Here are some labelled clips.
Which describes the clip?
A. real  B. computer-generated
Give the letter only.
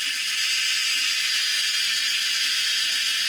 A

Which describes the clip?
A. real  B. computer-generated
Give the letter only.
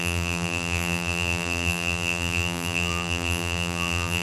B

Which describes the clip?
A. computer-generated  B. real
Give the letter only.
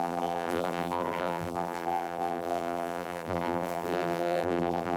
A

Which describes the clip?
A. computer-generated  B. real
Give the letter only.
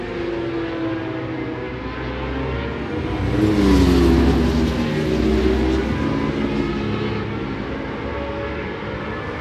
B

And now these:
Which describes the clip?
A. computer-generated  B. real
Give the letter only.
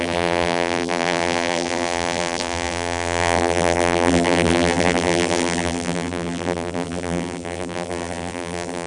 A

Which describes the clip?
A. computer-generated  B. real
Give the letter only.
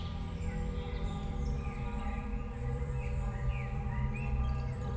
A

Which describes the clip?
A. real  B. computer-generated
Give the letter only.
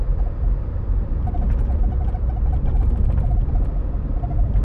B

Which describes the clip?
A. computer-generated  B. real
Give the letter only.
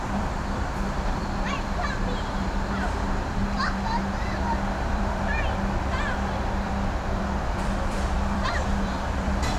A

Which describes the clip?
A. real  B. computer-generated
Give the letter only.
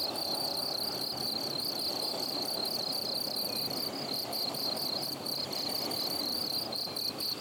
A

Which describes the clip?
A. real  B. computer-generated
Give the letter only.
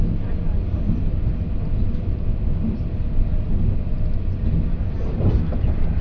A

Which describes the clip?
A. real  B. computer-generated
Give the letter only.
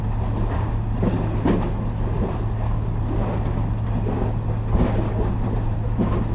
A